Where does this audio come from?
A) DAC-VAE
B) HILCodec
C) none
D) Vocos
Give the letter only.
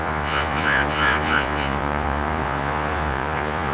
D